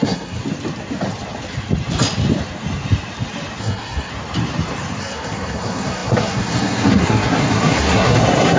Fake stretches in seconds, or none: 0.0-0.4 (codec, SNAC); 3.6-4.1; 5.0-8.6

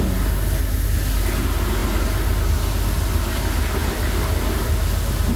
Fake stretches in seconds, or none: 3.8-4.7 (vocoder, BigVGAN v2)

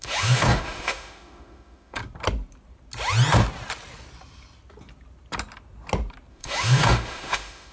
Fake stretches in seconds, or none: 0.0-2.0 (autoencoder, DAC-VAE); 6.3-7.7